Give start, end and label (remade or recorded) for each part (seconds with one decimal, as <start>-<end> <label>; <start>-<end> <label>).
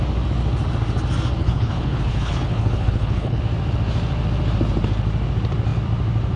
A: 0.0-1.4 recorded; 1.4-3.4 remade; 3.4-6.4 recorded